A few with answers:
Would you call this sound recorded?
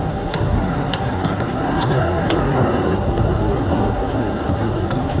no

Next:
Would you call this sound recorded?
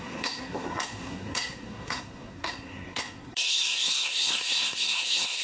no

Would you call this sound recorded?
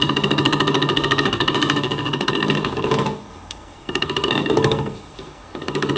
no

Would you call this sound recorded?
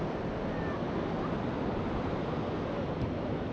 yes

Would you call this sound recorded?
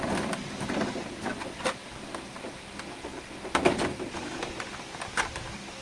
yes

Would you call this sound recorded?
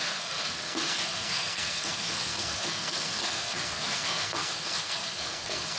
no